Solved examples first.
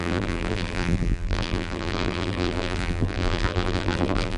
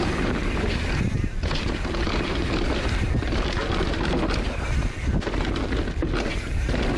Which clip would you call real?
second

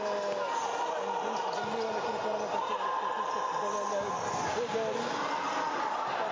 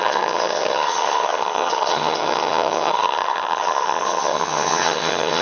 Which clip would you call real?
first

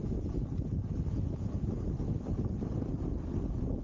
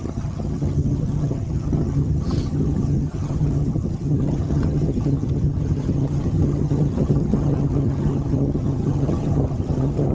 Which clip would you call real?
first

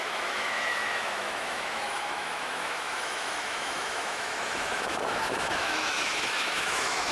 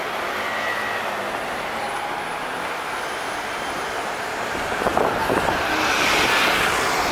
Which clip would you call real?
second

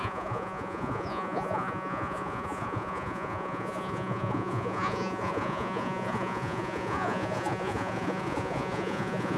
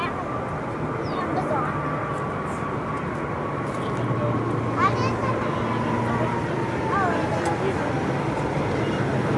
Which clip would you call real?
second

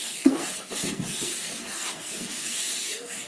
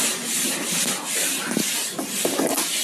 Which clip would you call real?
second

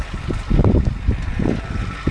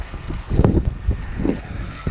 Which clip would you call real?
first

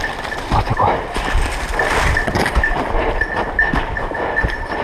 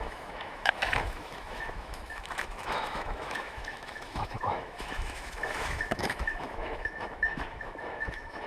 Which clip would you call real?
first